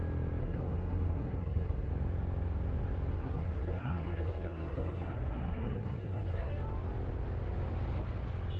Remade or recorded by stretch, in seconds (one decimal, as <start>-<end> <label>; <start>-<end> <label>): 0.0-0.4 recorded; 0.4-1.9 remade; 1.9-3.1 recorded; 3.1-6.5 remade; 6.5-8.6 recorded